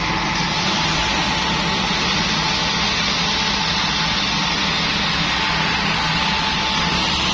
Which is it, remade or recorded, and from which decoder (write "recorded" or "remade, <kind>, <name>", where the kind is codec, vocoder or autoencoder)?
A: recorded